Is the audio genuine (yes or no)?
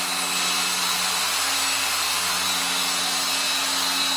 yes